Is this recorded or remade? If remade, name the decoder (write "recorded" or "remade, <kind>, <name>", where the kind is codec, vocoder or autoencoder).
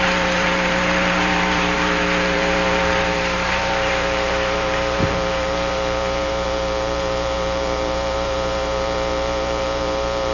remade, vocoder, BigVGAN v2